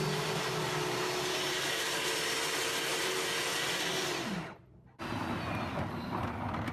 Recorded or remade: recorded